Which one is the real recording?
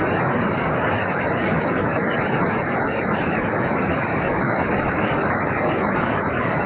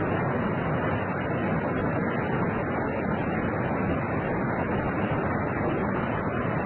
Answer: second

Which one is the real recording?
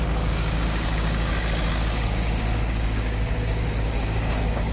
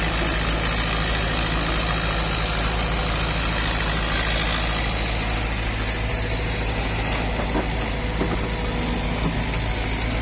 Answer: second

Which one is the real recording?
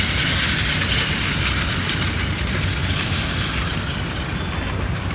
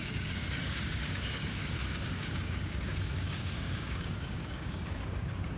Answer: first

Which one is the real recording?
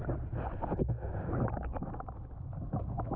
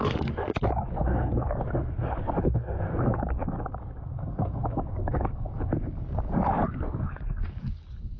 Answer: first